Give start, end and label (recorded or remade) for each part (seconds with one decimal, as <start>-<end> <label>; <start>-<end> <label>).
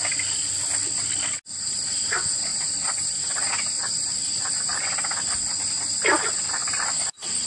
0.0-2.5 recorded; 2.5-4.6 remade; 4.6-6.6 recorded; 6.6-7.5 remade